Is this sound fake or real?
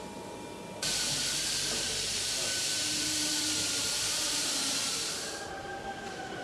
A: fake